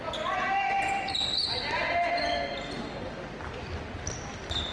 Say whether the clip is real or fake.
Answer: real